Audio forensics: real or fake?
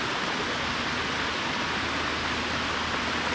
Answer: real